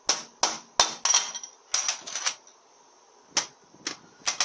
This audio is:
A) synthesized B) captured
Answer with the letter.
B